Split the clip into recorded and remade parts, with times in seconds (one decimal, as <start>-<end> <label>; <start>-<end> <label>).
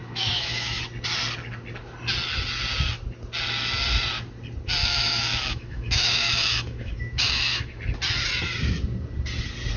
0.0-0.8 remade; 0.8-4.8 recorded; 4.8-7.8 remade; 7.8-9.8 recorded